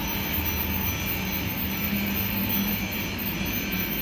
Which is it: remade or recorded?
recorded